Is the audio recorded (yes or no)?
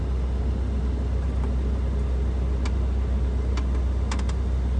yes